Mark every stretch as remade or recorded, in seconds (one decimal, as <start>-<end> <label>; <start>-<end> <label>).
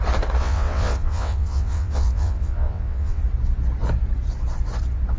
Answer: 0.0-0.4 recorded; 0.4-3.2 remade; 3.2-5.2 recorded